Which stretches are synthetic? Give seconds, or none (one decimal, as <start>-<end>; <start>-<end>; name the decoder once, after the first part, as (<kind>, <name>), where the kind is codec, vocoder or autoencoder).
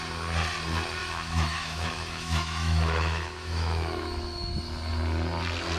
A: 1.0-4.5 (autoencoder, DAC-VAE)